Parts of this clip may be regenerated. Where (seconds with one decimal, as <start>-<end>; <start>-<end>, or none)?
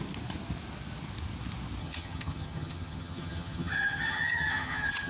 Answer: 1.8-5.1